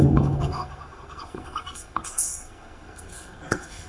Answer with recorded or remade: remade